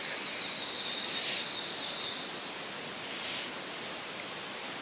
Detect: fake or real real